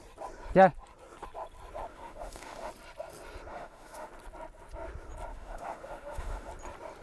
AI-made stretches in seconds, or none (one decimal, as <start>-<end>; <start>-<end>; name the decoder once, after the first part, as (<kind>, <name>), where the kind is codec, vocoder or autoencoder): 1.9-2.7 (autoencoder, DAC-VAE); 3.5-4.1; 5.3-6.5